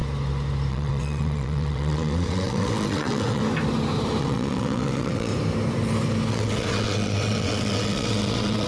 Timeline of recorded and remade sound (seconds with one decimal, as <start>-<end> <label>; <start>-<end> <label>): 0.0-0.7 recorded; 0.7-3.4 remade; 3.4-4.2 recorded; 4.2-5.3 remade; 5.3-6.3 recorded; 6.3-8.7 remade